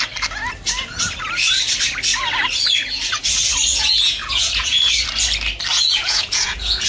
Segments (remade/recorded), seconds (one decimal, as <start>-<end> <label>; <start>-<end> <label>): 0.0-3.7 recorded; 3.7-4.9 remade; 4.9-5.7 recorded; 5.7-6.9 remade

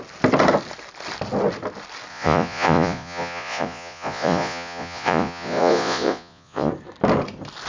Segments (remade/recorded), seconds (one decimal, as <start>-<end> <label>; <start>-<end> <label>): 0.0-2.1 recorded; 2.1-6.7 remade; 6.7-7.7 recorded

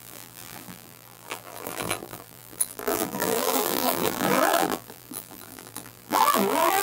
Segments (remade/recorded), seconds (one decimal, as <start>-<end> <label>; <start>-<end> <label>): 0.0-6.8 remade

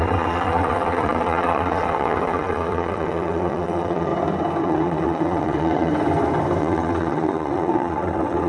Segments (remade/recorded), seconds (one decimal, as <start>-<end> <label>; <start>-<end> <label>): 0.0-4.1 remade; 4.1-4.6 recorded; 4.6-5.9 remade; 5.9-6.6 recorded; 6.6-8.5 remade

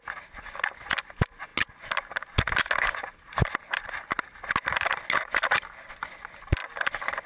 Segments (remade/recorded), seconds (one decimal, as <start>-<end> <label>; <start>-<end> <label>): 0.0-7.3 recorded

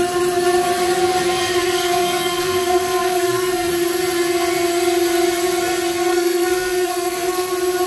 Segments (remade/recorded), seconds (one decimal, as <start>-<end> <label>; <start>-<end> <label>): 0.0-1.6 recorded; 1.6-3.7 remade; 3.7-6.1 recorded; 6.1-7.5 remade; 7.5-7.9 recorded